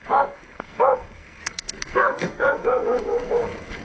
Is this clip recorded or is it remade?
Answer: remade